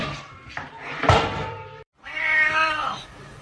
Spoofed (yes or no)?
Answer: yes